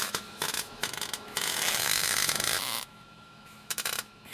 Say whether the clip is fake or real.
fake